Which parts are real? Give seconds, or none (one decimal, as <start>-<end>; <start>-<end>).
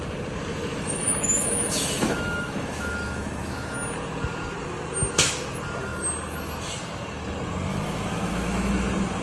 0.0-0.5; 3.7-7.7; 8.7-9.2